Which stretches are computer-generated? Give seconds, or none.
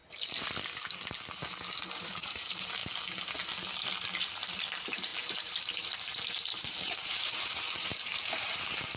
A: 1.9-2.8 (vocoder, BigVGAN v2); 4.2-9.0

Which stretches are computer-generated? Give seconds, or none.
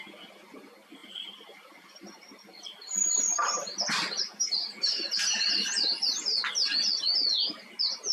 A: 1.0-5.2 (vocoder, BigVGAN v2)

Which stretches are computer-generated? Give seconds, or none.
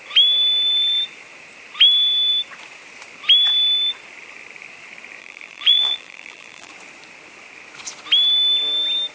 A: 5.2-6.7 (vocoder, BigVGAN v2)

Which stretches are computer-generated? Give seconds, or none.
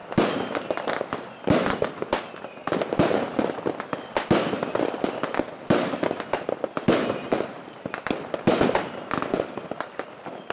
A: none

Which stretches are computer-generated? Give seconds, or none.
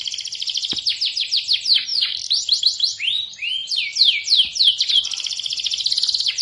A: 3.6-4.9 (vocoder, BigVGAN v2)